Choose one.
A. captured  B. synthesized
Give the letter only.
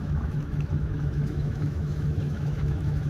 B